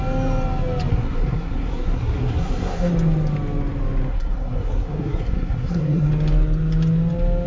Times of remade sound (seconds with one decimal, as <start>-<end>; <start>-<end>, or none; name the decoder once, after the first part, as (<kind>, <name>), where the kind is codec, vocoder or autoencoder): 0.9-2.9 (codec, SNAC); 4.1-6.1